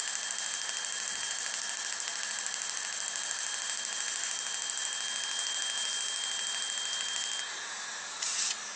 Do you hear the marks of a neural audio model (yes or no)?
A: no